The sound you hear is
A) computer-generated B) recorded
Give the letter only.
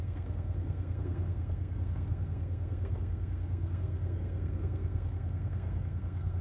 A